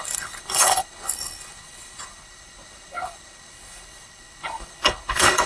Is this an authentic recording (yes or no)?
no